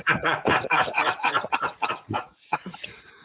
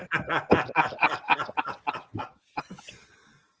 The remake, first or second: first